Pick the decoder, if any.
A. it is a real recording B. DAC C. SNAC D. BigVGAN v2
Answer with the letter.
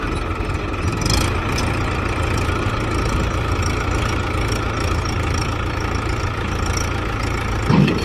A